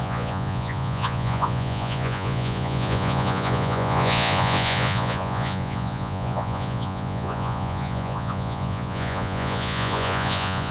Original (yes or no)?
no